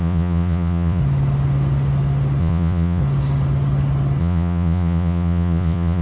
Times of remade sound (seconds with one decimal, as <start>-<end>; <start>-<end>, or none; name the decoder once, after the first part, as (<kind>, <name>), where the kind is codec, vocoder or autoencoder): 0.0-1.0 (vocoder, Vocos); 2.4-3.0; 4.2-6.0